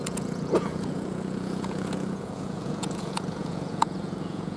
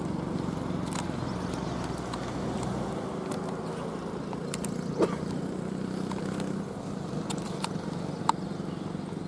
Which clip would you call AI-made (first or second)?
first